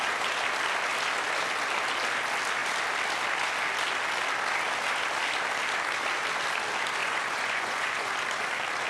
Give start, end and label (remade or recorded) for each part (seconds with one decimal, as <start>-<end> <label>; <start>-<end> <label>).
0.0-7.0 recorded; 7.0-8.1 remade; 8.1-8.9 recorded